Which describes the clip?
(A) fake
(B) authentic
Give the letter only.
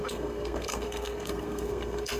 A